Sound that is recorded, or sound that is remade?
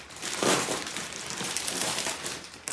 remade